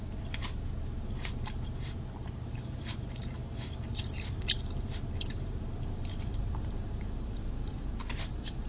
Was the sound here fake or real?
fake